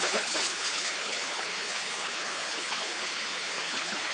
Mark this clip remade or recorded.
remade